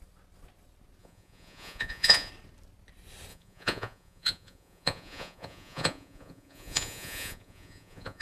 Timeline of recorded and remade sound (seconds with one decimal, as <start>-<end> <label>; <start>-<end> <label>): 0.0-1.0 recorded; 1.0-2.3 remade; 2.3-3.3 recorded; 3.3-8.2 remade